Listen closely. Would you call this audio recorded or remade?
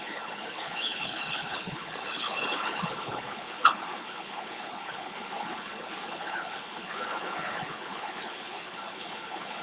remade